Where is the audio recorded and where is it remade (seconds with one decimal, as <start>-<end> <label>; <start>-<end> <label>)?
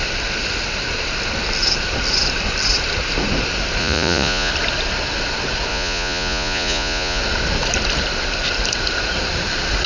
0.0-3.8 recorded; 3.8-4.5 remade; 4.5-5.7 recorded; 5.7-7.2 remade; 7.2-9.9 recorded